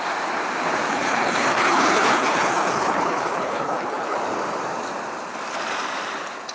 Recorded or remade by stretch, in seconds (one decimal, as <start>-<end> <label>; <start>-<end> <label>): 0.0-0.9 recorded; 0.9-4.2 remade; 4.2-6.5 recorded